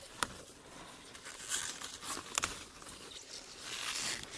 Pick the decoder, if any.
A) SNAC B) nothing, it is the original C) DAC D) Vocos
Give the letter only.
B